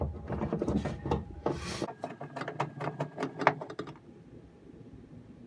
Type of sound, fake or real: real